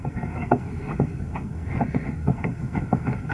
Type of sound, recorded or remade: remade